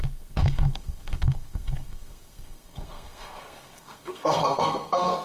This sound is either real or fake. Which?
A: fake